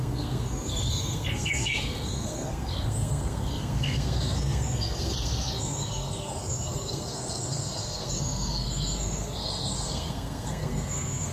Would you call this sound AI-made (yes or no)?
yes